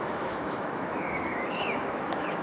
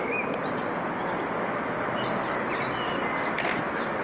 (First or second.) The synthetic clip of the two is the first